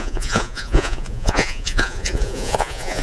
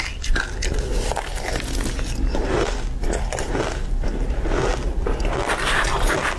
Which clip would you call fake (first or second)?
first